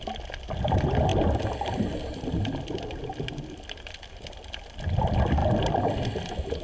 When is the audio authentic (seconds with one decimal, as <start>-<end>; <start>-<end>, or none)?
0.0-6.6